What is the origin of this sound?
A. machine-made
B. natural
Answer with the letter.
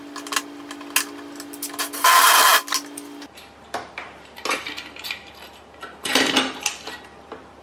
B